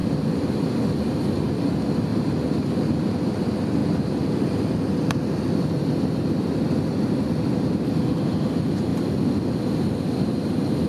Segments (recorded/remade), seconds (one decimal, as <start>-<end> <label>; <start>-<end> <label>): 0.0-1.0 remade; 1.0-10.9 recorded